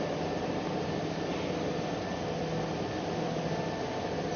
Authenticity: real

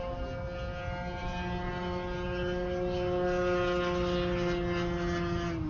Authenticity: real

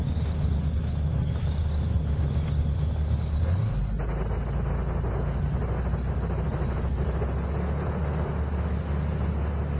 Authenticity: real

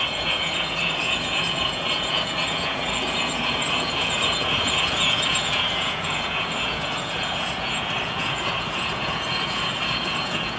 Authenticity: fake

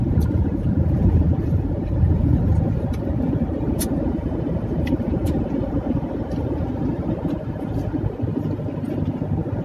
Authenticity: real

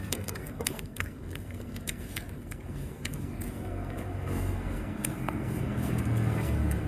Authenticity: fake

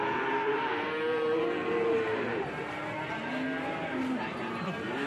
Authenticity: fake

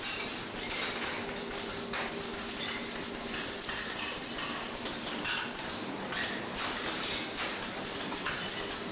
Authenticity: real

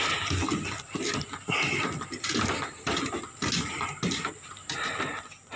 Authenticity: real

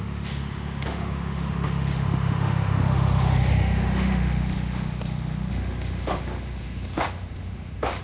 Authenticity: fake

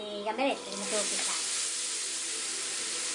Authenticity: real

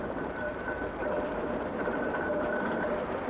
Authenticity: real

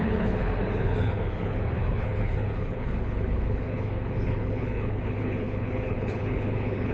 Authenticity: fake